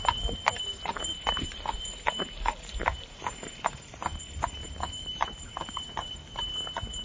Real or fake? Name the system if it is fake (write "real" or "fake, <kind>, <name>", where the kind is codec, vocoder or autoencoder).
fake, vocoder, BigVGAN v2